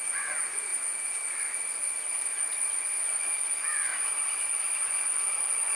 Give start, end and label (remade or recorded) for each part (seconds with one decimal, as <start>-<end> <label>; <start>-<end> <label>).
0.0-0.7 remade; 0.7-2.7 recorded; 2.7-3.9 remade; 3.9-4.9 recorded; 4.9-5.8 remade